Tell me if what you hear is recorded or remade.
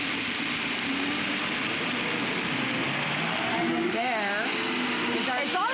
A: recorded